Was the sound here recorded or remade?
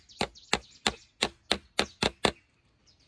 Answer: recorded